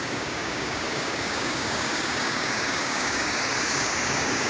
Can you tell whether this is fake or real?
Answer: fake